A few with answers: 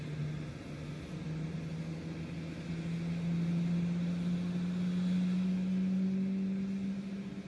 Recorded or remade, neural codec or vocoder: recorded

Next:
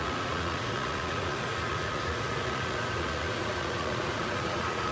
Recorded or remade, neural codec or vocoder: remade, vocoder, Vocos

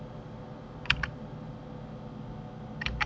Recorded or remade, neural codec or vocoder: recorded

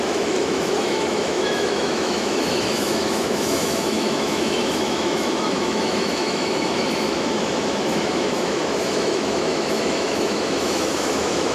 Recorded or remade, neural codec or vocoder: remade, autoencoder, DAC-VAE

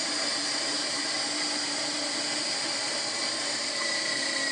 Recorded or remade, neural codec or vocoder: remade, vocoder, BigVGAN v2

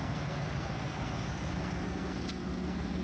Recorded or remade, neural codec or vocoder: remade, codec, SNAC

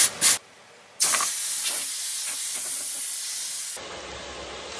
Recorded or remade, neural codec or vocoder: recorded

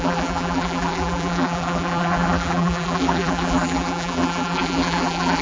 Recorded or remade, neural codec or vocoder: remade, vocoder, BigVGAN v2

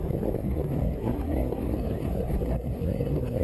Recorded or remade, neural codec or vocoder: remade, codec, SNAC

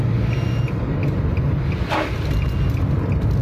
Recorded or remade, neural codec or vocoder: recorded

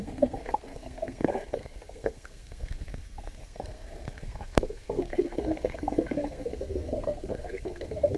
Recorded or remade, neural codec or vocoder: remade, codec, SNAC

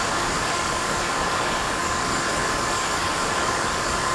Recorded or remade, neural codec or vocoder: remade, codec, DAC